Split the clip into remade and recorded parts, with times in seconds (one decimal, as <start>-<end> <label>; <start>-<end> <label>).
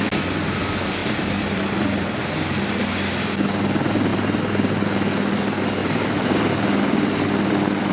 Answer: 0.0-1.0 recorded; 1.0-2.2 remade; 2.2-5.8 recorded; 5.8-6.5 remade; 6.5-7.9 recorded